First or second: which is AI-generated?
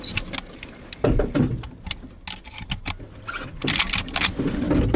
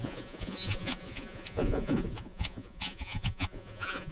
second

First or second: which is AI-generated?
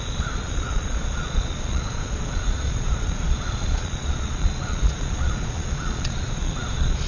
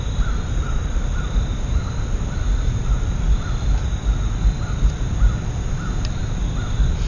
first